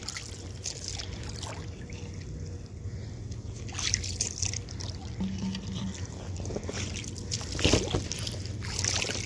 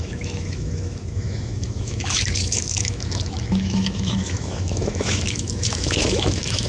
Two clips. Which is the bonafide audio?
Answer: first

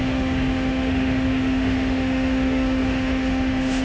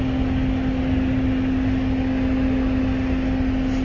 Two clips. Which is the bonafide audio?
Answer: second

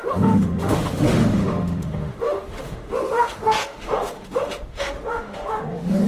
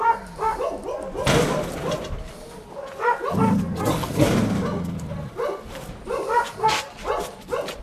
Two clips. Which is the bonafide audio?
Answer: second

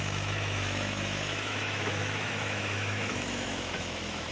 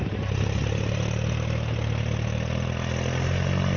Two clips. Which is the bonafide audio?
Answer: second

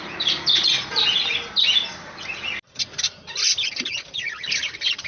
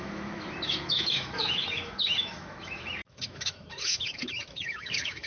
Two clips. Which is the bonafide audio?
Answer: first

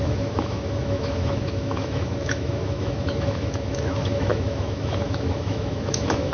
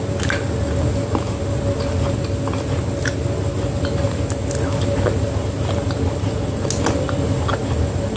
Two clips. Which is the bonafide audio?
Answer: second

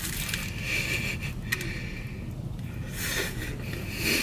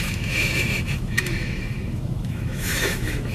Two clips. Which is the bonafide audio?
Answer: first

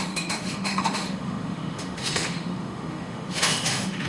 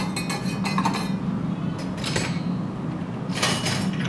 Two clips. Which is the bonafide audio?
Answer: second